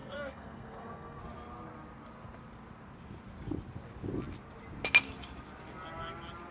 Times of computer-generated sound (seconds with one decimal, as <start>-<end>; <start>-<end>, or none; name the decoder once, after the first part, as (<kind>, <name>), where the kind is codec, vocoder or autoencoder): 0.0-1.2 (codec, SNAC)